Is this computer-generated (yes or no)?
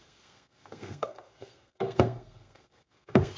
yes